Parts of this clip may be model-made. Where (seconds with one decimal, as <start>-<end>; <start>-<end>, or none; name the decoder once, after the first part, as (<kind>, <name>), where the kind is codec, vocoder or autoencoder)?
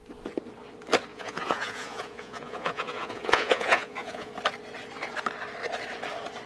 1.1-4.3 (vocoder, Vocos)